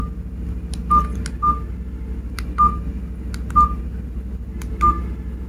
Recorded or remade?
recorded